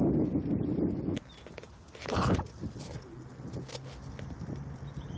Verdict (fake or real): real